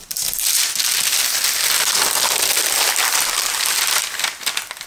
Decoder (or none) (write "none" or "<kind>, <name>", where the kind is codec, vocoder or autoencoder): none